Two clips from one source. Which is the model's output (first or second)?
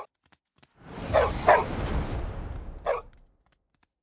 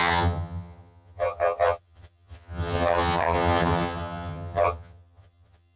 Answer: second